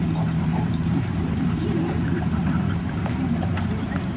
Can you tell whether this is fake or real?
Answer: fake